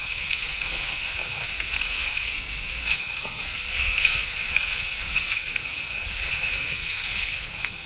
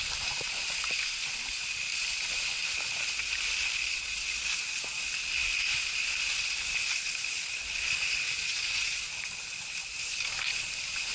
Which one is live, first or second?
second